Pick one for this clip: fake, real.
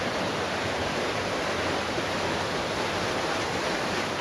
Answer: real